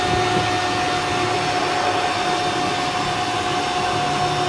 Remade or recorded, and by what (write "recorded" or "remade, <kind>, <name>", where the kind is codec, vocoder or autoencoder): recorded